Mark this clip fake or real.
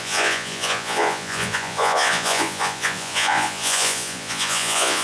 fake